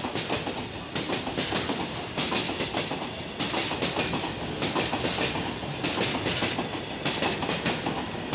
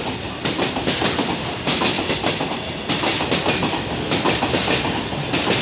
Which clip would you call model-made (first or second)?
second